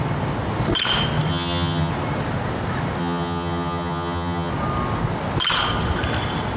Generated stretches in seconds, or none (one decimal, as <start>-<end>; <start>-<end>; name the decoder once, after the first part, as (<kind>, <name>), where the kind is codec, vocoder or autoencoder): 1.3-1.9 (vocoder, HiFi-GAN); 3.0-4.5